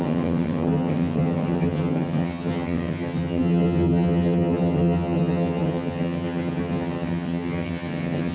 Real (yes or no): no